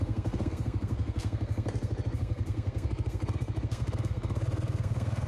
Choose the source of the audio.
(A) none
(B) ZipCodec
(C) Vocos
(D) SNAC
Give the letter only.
D